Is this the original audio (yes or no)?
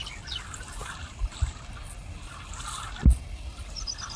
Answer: yes